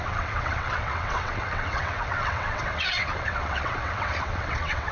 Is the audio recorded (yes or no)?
no